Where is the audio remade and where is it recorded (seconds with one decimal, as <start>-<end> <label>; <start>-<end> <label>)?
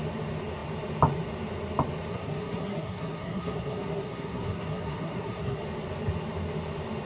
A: 0.0-2.1 recorded; 2.1-5.6 remade; 5.6-7.1 recorded